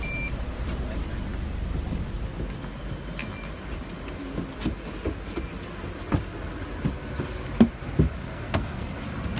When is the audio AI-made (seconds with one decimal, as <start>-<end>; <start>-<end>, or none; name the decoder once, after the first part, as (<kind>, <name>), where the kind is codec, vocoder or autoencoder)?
8.2-9.0 (codec, SNAC)